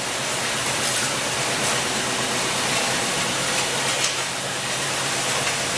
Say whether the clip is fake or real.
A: real